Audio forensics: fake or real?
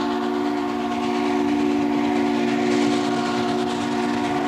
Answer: real